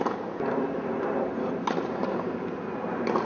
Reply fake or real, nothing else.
real